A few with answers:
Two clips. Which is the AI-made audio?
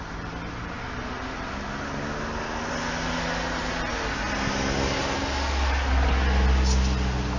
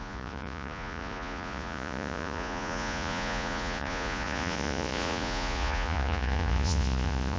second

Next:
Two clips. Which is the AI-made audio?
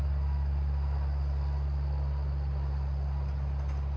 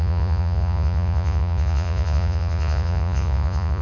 second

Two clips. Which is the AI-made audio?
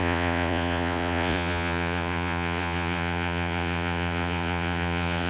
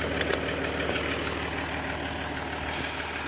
first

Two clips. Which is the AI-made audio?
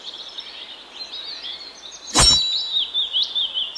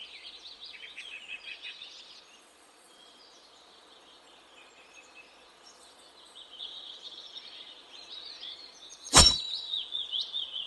second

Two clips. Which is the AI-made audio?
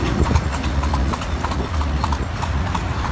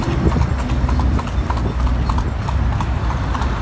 first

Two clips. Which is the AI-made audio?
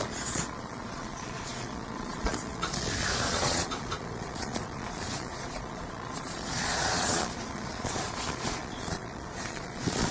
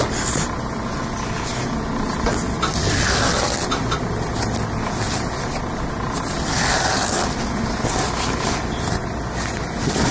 first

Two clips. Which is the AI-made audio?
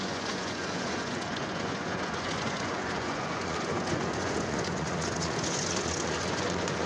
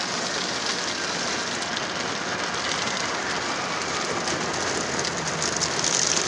first